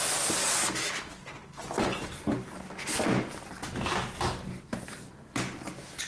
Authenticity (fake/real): real